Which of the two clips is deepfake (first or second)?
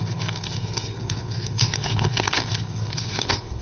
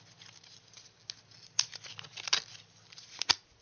first